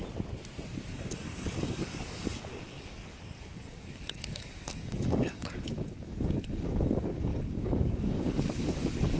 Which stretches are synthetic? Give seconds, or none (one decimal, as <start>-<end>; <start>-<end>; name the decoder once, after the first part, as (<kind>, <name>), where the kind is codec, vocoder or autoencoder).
0.9-9.2 (codec, DAC)